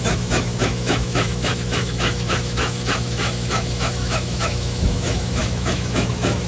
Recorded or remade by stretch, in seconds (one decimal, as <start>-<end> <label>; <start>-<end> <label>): 0.0-6.5 remade